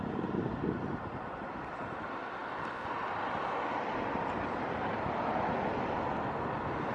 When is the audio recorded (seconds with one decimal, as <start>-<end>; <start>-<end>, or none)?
0.0-0.9; 1.5-6.9